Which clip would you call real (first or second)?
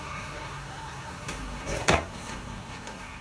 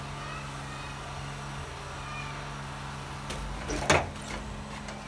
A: second